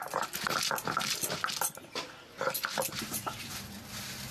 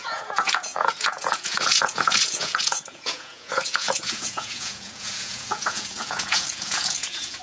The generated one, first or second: second